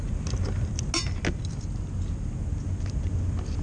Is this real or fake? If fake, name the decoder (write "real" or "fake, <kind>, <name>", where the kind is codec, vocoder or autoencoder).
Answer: real